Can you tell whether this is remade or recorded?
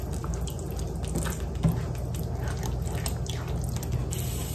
recorded